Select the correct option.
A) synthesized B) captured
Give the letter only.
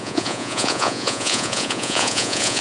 A